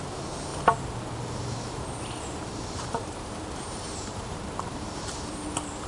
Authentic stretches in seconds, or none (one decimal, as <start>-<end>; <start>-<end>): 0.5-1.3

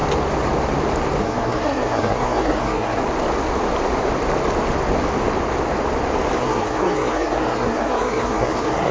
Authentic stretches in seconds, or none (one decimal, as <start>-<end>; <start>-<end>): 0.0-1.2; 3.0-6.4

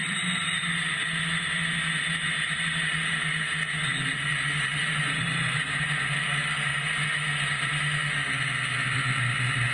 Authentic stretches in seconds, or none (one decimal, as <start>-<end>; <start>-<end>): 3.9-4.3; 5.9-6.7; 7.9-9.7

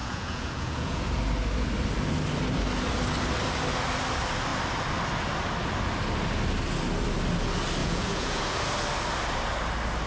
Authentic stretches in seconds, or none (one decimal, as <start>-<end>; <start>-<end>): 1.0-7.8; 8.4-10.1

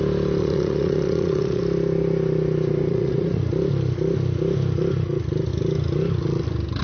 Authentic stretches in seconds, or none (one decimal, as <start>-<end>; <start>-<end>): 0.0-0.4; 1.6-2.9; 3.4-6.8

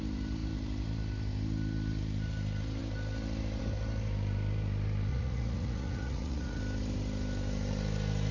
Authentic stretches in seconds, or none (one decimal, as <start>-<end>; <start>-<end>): 0.0-5.1; 6.6-8.3

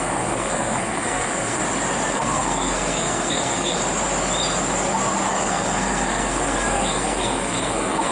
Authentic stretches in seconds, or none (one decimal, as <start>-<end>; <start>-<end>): 1.6-2.1; 3.8-5.3

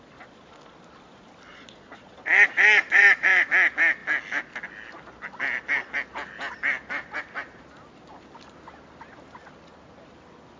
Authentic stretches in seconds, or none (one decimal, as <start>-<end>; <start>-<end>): 0.0-1.5; 3.5-10.6